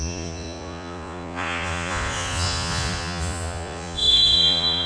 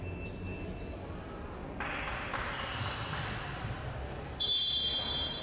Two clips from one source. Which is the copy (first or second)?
first